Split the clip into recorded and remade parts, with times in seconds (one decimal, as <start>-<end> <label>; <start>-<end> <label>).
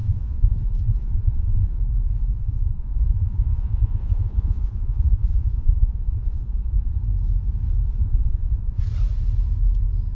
0.0-1.8 remade; 1.8-2.2 recorded; 2.2-7.0 remade; 7.0-7.9 recorded; 7.9-8.8 remade; 8.8-10.1 recorded